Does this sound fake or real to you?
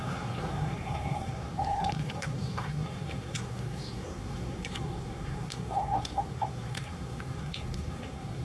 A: fake